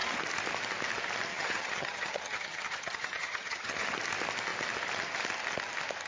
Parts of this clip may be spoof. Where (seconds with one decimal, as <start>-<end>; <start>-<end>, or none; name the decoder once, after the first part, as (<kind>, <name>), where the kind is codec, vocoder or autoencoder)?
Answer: 1.3-3.9 (vocoder, HiFi-GAN)